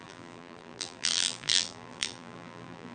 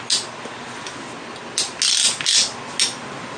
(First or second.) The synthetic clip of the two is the first